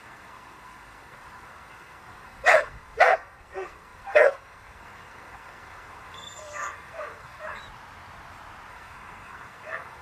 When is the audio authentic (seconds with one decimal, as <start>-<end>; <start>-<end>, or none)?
7.6-8.7

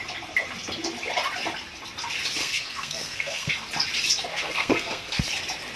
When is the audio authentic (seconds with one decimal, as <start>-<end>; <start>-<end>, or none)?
0.0-2.4; 3.5-4.3; 5.2-5.8

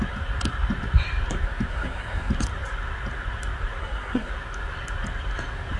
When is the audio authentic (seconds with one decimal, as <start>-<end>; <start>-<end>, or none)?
0.0-1.7; 2.3-3.8; 4.3-5.8

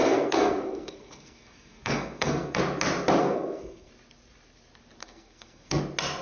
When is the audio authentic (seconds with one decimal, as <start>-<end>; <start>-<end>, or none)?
2.6-3.2; 3.9-5.0; 5.8-6.2